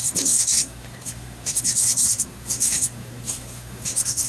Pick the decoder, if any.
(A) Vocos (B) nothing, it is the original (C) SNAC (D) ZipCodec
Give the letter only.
C